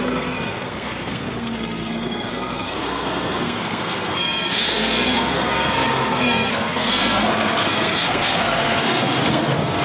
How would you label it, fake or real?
fake